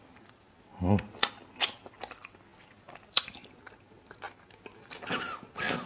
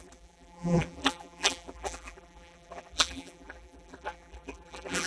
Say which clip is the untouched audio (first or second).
first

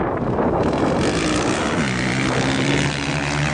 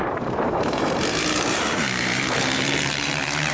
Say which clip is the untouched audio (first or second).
first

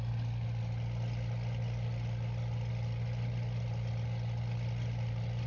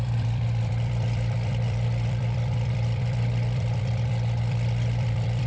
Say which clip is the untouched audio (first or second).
first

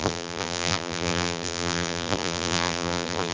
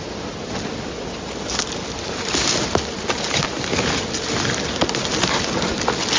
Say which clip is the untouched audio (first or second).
second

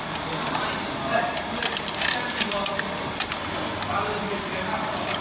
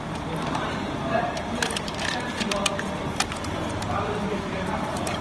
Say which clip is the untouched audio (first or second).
first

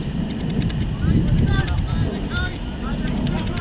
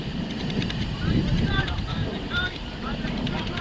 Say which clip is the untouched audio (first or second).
first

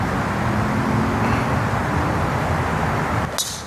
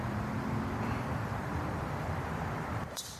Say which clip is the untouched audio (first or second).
first